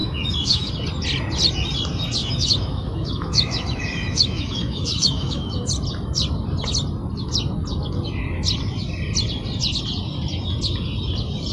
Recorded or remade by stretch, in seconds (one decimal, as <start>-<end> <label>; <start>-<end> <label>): 0.0-0.7 remade; 0.7-2.2 recorded; 2.2-5.7 remade; 5.7-11.5 recorded